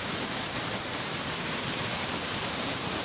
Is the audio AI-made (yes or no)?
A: yes